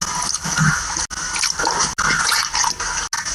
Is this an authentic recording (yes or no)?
yes